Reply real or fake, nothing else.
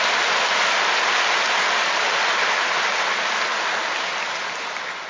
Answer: real